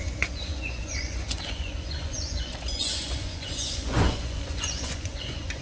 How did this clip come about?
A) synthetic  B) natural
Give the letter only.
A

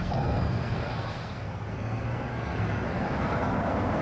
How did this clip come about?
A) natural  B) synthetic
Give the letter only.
B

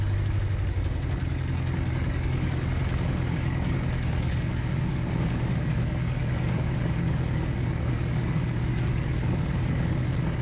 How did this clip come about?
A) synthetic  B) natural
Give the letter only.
A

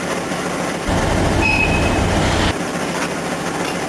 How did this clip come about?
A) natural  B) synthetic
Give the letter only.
A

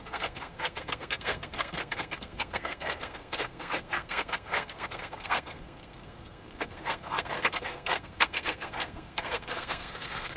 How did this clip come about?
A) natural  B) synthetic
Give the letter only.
B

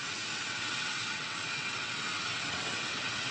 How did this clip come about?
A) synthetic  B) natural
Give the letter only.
A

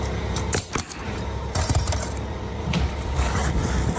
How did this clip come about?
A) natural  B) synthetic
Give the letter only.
B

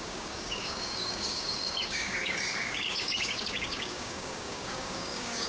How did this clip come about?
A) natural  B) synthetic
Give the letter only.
B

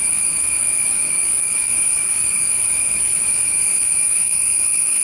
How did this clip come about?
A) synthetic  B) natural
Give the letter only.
A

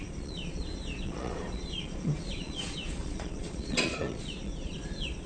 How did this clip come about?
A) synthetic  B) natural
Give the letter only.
A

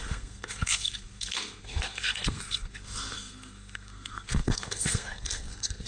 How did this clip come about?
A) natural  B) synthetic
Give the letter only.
B